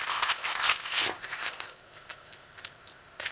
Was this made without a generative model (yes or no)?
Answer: no